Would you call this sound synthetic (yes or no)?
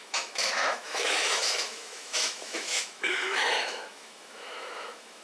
yes